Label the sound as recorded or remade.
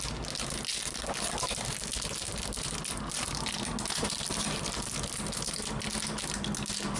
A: recorded